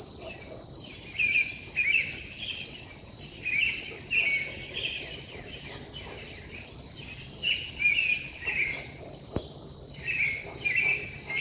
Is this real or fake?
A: real